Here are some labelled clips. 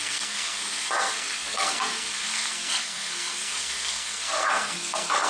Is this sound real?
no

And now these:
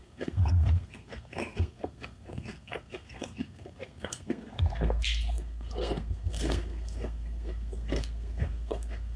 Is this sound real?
no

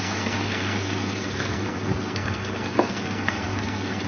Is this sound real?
no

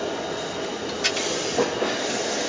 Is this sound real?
yes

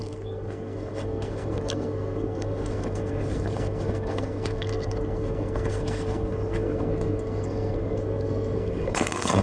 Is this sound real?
no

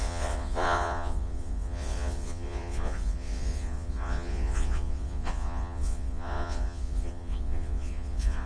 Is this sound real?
no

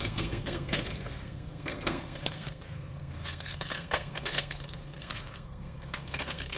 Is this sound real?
no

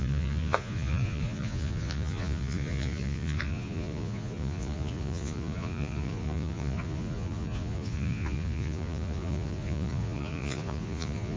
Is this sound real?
no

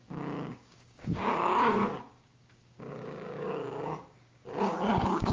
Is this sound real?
no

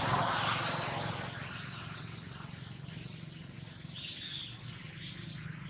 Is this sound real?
yes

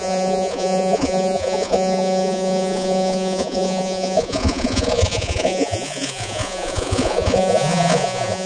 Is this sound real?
no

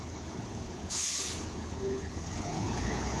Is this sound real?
no